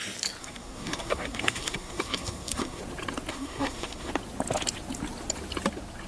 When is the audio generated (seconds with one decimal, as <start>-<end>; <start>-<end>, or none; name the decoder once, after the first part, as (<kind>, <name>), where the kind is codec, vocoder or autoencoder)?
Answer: 0.4-2.8 (codec, SNAC); 3.3-4.1